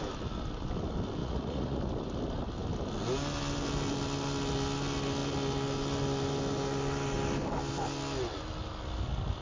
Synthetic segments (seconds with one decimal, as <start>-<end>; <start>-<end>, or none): 1.2-1.8